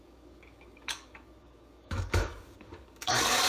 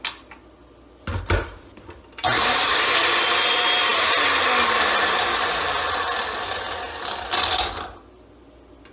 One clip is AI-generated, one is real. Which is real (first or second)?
second